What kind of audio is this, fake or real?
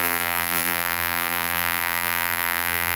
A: fake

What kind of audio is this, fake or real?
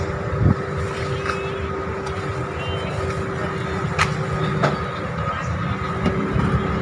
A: real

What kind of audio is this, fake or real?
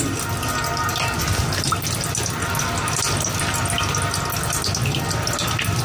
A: real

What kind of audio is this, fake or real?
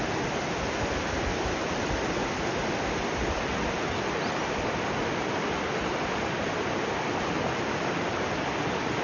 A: real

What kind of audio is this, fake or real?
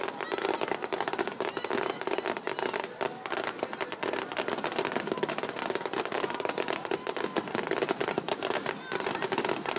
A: real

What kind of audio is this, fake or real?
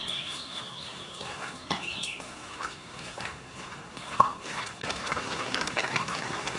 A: fake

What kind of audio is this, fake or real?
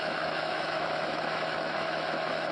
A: fake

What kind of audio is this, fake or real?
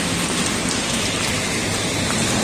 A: real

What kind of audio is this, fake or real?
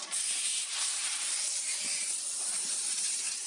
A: fake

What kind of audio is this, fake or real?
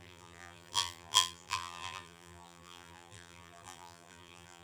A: fake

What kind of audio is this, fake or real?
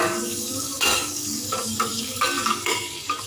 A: fake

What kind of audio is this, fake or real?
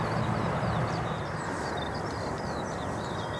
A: fake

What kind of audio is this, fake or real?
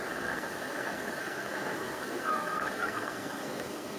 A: fake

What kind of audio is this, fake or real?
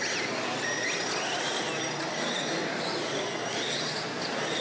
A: fake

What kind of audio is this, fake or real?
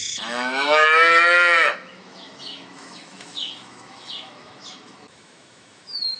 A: fake